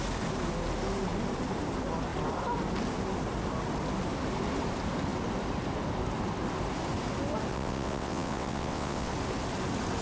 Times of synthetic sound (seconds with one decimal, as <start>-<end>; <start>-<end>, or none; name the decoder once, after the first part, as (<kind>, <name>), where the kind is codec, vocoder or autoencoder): 7.5-9.1 (vocoder, WaveNeXt)